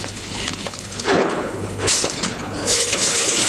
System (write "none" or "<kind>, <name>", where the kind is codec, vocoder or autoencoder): codec, HILCodec